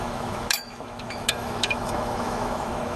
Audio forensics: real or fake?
fake